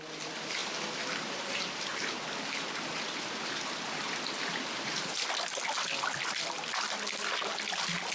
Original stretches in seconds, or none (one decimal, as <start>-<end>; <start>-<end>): 0.0-8.1